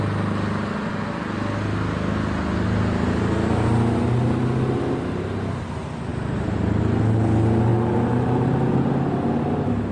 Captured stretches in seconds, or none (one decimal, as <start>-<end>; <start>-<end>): 0.0-9.9